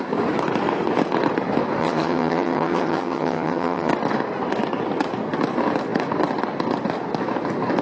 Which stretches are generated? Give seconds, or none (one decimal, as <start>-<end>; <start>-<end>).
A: 1.8-3.9